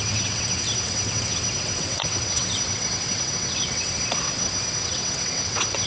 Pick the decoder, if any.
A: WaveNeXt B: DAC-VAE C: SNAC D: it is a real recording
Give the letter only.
A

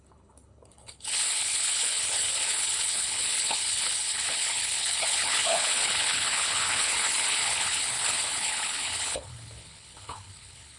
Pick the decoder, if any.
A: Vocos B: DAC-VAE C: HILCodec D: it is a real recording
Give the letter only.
C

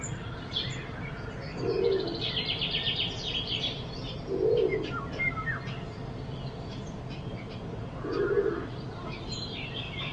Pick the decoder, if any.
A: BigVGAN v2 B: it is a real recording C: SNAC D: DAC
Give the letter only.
B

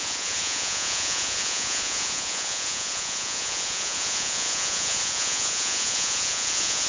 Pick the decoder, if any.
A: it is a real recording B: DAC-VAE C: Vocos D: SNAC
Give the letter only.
C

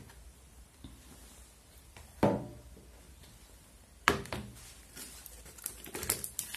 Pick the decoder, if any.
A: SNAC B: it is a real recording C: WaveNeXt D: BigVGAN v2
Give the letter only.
D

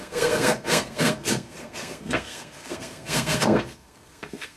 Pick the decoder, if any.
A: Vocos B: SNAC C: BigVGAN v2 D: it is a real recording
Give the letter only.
B